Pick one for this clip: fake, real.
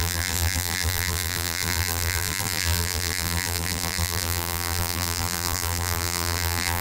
fake